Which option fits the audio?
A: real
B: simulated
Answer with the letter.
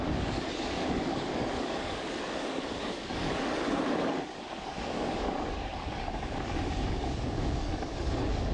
B